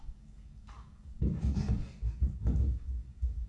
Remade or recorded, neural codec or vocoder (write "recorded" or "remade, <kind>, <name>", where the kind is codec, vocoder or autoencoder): remade, codec, DAC